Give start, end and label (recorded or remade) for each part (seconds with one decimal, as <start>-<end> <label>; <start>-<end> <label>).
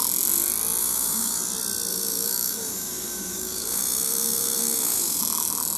0.0-0.8 recorded; 0.8-1.4 remade; 1.4-1.9 recorded; 1.9-5.2 remade; 5.2-5.8 recorded